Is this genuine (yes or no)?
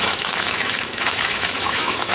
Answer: no